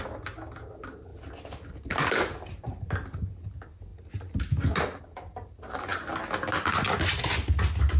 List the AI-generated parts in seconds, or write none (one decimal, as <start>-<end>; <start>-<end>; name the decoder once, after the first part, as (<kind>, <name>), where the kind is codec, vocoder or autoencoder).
none